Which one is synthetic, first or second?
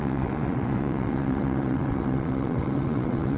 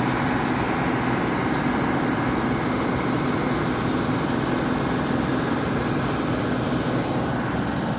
first